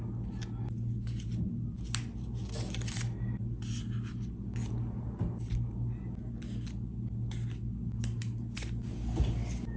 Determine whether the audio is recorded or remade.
recorded